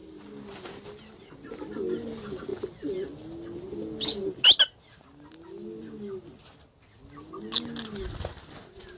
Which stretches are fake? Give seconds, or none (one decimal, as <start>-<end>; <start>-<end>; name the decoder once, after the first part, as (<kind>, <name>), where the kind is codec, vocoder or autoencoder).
none